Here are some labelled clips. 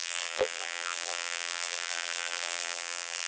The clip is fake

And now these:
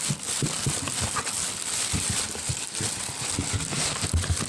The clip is real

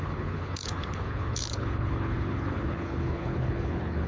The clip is fake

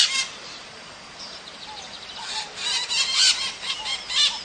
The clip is real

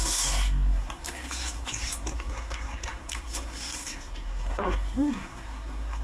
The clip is fake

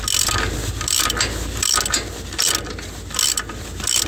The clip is real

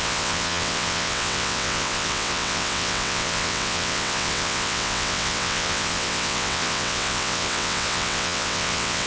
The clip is fake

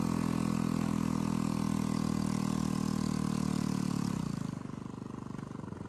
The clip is real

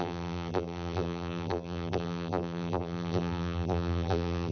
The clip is fake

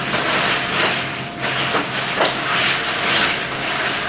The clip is real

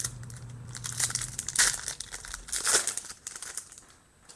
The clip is real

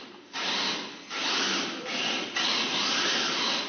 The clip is real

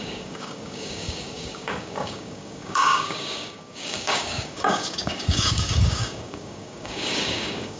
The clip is fake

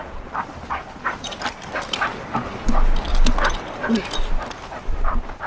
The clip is real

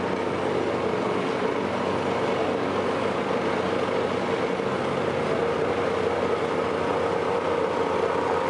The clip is real